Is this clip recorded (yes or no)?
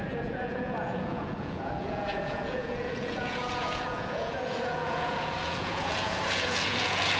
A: no